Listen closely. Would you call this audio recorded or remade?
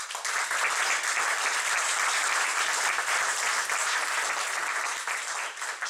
recorded